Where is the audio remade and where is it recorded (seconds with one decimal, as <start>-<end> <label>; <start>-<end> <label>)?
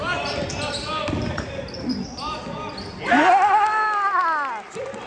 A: 0.0-3.1 remade; 3.1-5.1 recorded